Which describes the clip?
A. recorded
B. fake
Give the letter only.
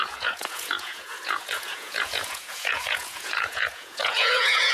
B